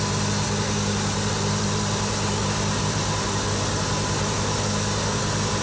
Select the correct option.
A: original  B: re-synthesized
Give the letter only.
A